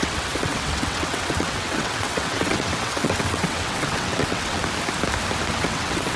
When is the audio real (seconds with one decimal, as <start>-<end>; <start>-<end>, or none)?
4.6-5.5